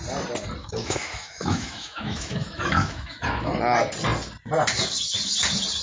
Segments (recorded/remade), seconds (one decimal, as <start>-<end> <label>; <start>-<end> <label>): 0.0-0.6 recorded; 0.6-3.5 remade; 3.5-5.8 recorded